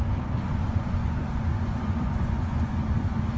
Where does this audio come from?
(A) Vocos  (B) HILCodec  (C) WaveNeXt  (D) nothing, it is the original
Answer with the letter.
A